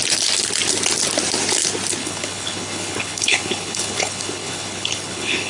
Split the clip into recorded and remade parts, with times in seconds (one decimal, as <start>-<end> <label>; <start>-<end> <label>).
0.0-2.0 recorded; 2.0-5.5 remade